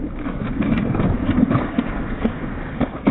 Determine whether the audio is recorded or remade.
remade